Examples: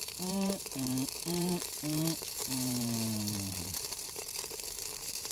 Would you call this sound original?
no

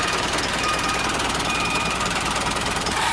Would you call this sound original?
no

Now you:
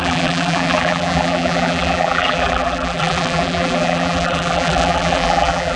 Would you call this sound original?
no